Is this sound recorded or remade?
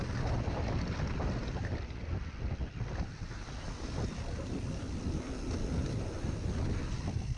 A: recorded